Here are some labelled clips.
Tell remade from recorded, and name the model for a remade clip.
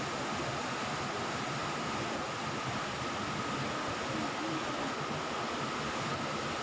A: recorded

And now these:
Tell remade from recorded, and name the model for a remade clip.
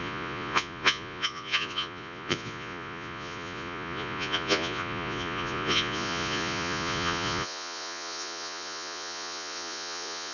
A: remade, vocoder, Vocos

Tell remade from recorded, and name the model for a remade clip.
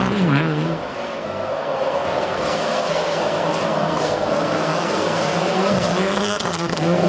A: remade, codec, SNAC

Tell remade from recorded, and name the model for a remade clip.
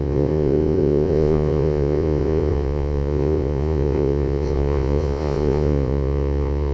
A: remade, vocoder, Vocos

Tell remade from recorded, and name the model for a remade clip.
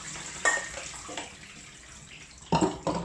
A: recorded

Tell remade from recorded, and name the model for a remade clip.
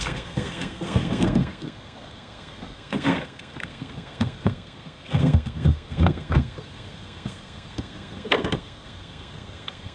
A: remade, codec, SNAC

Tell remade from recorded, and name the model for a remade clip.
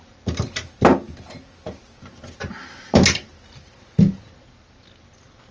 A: recorded